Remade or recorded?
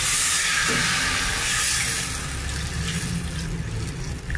remade